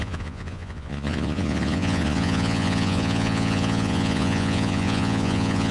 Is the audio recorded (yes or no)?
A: no